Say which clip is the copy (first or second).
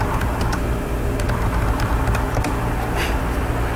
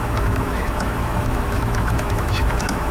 second